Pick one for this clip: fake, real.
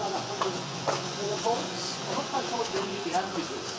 fake